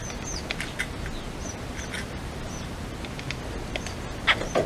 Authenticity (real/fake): real